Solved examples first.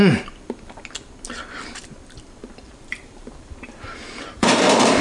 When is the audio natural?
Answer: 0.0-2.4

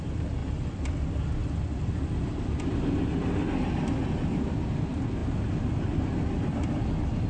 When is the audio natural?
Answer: 0.0-7.3

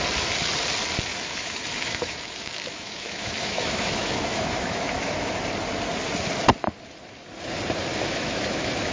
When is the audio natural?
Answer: 0.0-1.1; 5.4-7.9